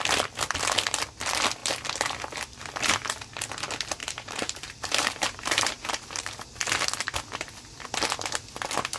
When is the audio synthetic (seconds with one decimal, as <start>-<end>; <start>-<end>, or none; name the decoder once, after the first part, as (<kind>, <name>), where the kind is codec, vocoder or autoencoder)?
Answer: 4.0-6.3 (vocoder, BigVGAN v2)